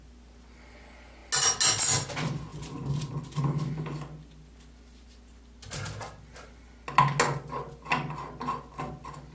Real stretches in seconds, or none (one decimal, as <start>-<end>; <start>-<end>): 0.0-9.3

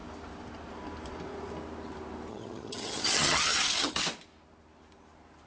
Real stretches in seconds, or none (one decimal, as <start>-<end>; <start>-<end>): 0.0-2.3; 4.0-5.5

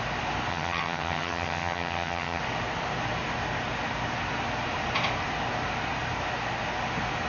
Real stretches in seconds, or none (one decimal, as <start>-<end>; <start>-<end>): 0.0-0.5; 2.4-7.3

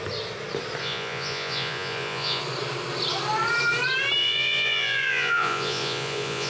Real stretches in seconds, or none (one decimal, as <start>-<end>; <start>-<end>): 0.0-0.8; 2.4-4.2

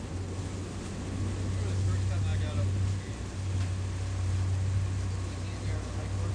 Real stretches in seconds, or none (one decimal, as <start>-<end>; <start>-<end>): 0.0-6.3

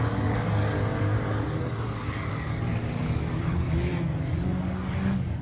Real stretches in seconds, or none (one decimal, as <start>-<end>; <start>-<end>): none

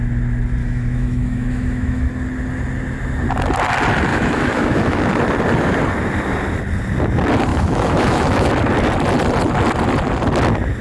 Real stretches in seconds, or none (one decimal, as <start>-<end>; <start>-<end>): 0.0-0.6; 2.1-4.1; 5.0-7.5; 8.5-10.8

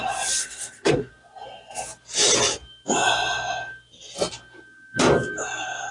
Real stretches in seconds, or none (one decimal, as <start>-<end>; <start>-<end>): 0.0-0.4; 1.1-5.9